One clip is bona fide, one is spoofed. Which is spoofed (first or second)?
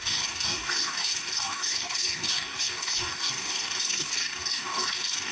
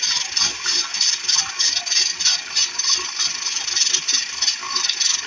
first